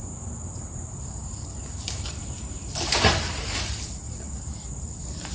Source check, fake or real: fake